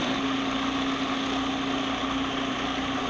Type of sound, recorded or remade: recorded